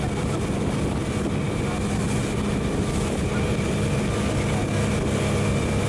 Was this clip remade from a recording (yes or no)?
no